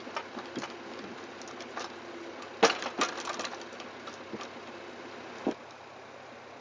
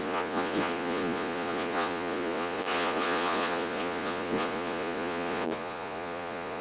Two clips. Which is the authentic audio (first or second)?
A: first